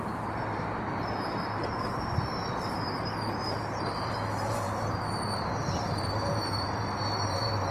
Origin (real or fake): fake